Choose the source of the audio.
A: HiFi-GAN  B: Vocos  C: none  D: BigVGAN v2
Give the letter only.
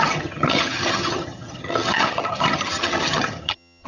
A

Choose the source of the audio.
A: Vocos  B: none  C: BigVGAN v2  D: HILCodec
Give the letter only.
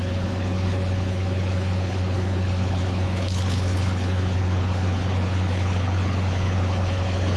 D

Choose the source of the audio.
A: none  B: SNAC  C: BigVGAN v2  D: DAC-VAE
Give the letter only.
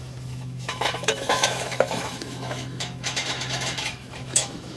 D